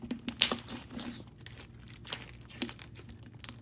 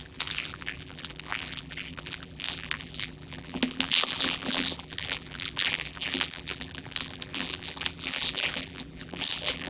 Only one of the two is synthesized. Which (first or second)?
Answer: second